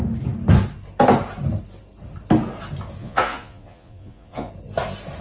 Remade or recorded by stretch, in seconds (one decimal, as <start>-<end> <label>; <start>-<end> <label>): 0.0-3.0 recorded; 3.0-4.5 remade; 4.5-5.2 recorded